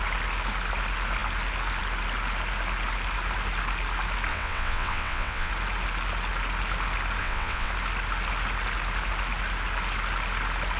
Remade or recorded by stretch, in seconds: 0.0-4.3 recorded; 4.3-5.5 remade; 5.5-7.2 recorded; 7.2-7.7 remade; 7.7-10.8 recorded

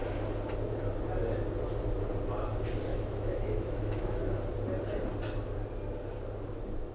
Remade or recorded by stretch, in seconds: 0.0-2.9 recorded; 2.9-4.2 remade; 4.2-6.9 recorded

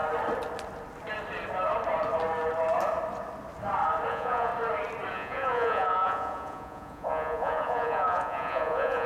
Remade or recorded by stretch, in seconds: 0.0-4.1 recorded; 4.1-4.5 remade; 4.5-5.1 recorded; 5.1-9.1 remade

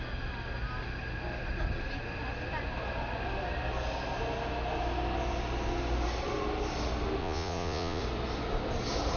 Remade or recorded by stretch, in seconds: 0.0-7.2 recorded; 7.2-8.0 remade; 8.0-9.2 recorded

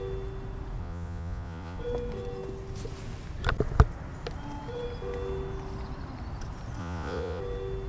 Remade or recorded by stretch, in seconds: 0.0-0.8 recorded; 0.8-1.8 remade; 1.8-6.8 recorded; 6.8-7.4 remade; 7.4-7.9 recorded

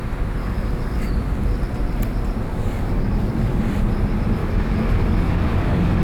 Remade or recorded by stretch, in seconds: 0.0-0.4 recorded; 0.4-1.1 remade; 1.1-2.5 recorded; 2.5-3.6 remade; 3.6-4.4 recorded; 4.4-6.0 remade